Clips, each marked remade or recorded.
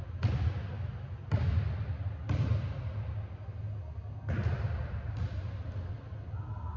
recorded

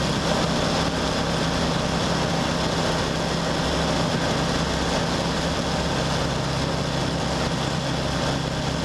recorded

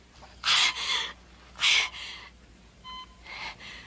recorded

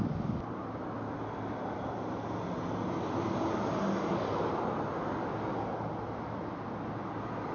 recorded